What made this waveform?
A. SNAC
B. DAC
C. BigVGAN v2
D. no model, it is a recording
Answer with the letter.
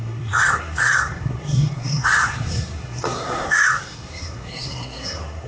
A